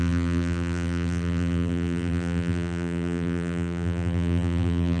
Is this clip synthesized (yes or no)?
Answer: yes